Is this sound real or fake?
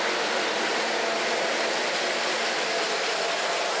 fake